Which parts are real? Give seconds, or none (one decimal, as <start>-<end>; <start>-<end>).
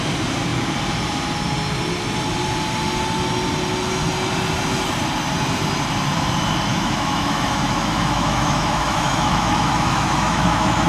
0.0-6.7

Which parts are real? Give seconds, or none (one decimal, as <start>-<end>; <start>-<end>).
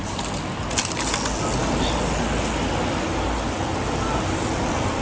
0.0-5.0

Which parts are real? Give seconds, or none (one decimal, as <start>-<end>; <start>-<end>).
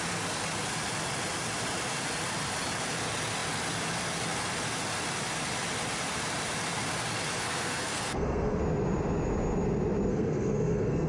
0.0-7.4; 8.6-10.1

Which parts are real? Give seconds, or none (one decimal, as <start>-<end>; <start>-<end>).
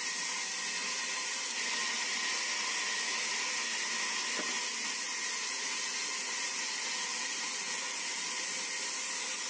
0.0-9.5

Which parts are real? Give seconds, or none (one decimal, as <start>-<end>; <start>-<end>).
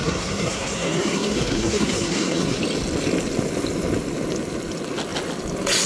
2.6-5.9